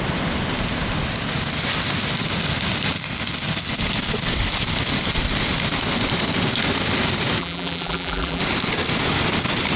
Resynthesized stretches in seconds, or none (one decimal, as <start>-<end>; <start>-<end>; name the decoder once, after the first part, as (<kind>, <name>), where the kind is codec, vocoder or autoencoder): 7.4-8.4 (vocoder, BigVGAN v2)